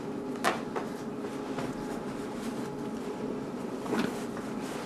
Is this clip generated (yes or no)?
no